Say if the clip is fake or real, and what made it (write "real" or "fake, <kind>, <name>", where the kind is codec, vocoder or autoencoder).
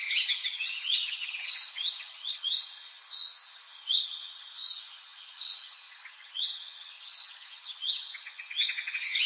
fake, vocoder, HiFi-GAN